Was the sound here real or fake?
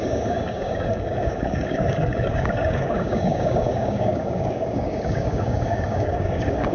fake